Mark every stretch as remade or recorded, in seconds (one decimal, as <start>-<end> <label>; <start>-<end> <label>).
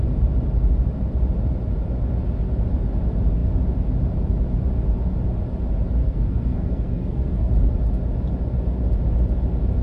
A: 0.0-6.0 recorded; 6.0-7.5 remade; 7.5-9.8 recorded